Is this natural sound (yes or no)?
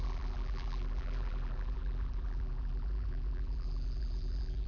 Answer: no